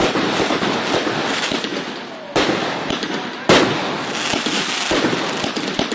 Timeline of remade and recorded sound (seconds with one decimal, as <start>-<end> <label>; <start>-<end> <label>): 0.0-1.7 remade; 1.7-5.2 recorded; 5.2-5.9 remade